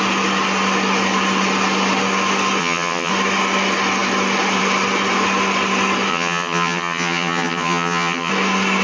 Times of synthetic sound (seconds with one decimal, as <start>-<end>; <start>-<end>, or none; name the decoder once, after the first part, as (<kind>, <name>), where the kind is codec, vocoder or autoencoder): 2.6-3.1 (vocoder, HiFi-GAN); 6.1-8.3